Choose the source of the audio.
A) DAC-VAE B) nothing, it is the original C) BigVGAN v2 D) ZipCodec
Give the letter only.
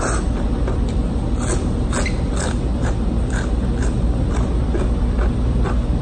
B